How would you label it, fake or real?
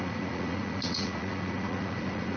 fake